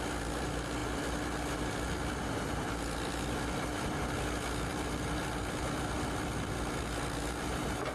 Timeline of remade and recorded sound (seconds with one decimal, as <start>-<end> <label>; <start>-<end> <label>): 0.0-4.7 recorded; 4.7-5.6 remade; 5.6-7.9 recorded